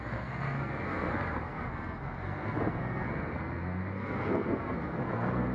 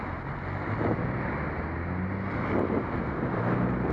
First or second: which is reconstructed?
first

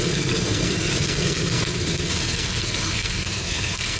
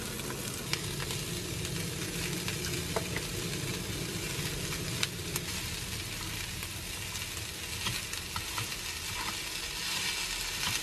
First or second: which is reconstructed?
first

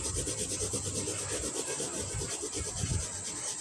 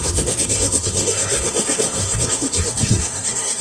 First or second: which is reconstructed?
second